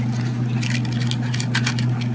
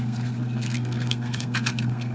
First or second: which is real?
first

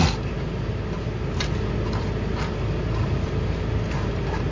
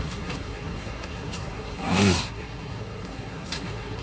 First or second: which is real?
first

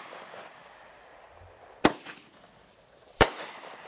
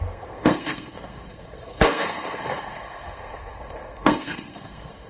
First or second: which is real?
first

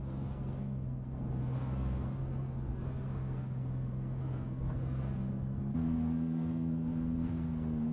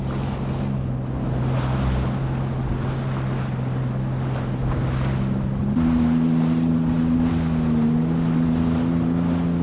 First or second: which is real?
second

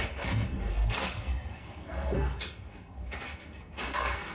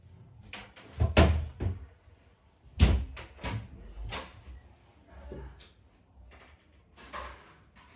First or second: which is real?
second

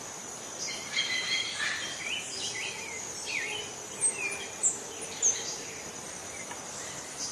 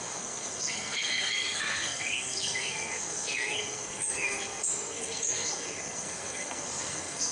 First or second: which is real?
first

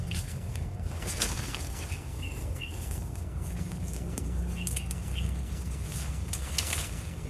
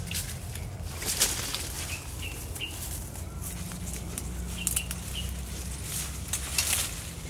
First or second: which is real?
second